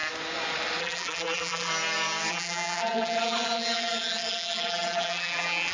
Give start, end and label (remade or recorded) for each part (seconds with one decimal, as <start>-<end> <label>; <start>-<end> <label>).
0.0-0.8 recorded; 0.8-1.7 remade; 1.7-2.3 recorded; 2.3-5.7 remade